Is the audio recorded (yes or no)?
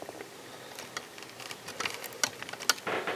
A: yes